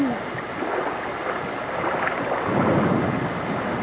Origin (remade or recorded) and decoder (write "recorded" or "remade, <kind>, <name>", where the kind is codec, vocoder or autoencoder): recorded